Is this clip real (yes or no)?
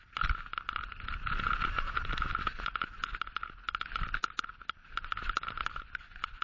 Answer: yes